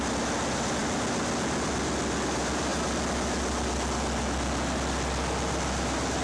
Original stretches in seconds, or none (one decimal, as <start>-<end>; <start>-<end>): 0.0-6.2